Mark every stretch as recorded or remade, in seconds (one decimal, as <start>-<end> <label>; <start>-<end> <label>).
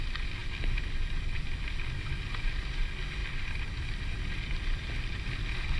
0.0-5.8 recorded